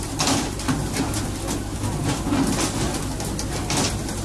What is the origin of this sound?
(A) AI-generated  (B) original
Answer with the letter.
B